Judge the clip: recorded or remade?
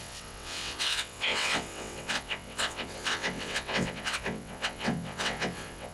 remade